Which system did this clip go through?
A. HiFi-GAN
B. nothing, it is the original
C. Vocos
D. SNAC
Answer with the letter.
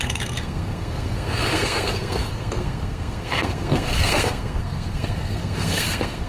D